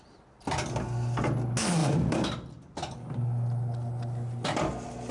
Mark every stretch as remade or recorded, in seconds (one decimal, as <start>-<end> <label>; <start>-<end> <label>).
0.0-5.1 recorded